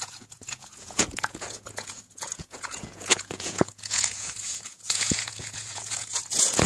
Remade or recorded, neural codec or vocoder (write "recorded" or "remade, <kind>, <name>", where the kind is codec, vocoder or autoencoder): remade, vocoder, Vocos